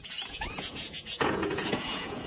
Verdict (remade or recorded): remade